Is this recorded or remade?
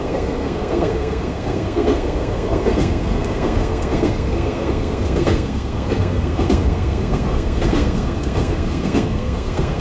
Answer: remade